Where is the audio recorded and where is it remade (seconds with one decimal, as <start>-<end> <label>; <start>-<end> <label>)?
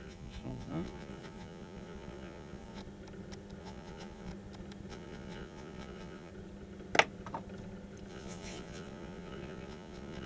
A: 0.0-2.8 remade; 2.8-3.6 recorded; 3.6-4.3 remade; 4.3-4.9 recorded; 4.9-6.3 remade; 6.3-8.1 recorded; 8.1-10.3 remade